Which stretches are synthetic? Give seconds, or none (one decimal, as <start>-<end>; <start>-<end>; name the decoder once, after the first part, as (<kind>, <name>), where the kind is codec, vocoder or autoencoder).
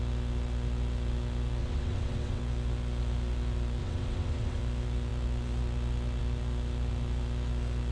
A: 1.6-2.4 (vocoder, WaveNeXt); 3.8-4.6